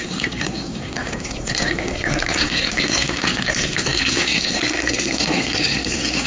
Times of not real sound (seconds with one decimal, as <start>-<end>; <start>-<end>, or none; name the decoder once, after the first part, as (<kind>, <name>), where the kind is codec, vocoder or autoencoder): 0.0-6.3 (codec, SNAC)